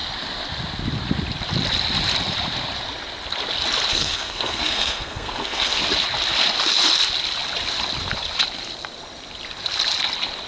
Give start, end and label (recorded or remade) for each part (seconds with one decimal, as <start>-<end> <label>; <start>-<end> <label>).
0.0-3.9 recorded; 3.9-5.8 remade; 5.8-10.5 recorded